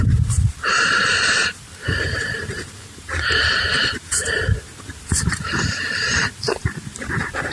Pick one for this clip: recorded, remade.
remade